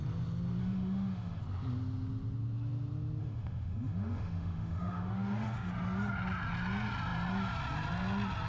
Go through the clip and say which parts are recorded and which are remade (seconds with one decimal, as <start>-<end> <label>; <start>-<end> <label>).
0.0-0.6 recorded; 0.6-1.4 remade; 1.4-3.2 recorded; 3.2-5.7 remade; 5.7-8.5 recorded